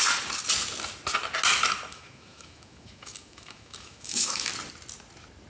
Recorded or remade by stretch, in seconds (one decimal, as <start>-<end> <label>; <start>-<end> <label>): 0.0-1.9 recorded; 1.9-4.5 remade; 4.5-5.5 recorded